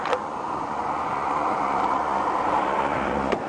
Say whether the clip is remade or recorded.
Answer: remade